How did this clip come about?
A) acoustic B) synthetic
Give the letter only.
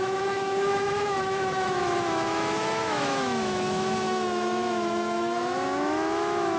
B